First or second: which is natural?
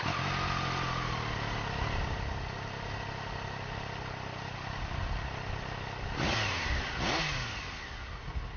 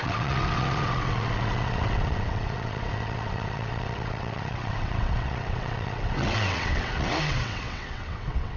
first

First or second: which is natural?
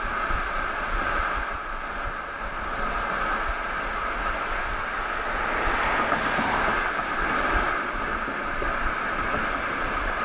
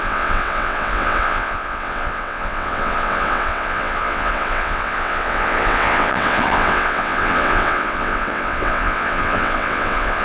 first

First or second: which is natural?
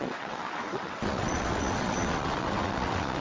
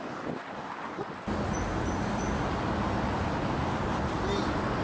second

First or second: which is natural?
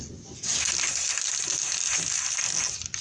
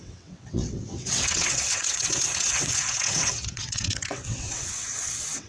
first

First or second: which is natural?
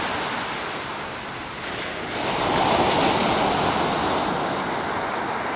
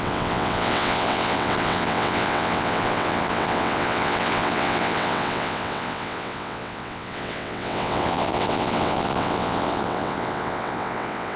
first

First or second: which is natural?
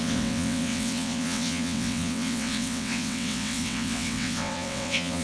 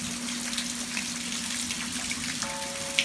second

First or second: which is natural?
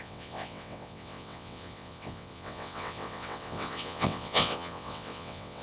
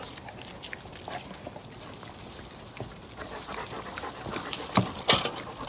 second